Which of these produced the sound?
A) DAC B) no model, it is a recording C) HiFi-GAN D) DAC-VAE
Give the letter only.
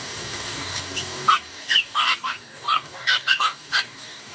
A